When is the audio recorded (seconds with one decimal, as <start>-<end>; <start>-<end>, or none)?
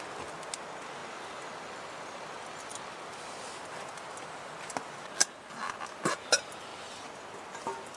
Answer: 0.0-8.0